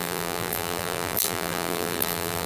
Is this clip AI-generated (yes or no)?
yes